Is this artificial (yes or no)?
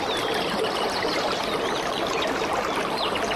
yes